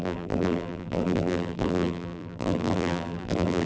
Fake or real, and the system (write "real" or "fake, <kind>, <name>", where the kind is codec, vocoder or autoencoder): fake, vocoder, BigVGAN v2